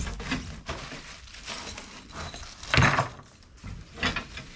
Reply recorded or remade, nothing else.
recorded